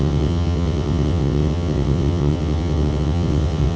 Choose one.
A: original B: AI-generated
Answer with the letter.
B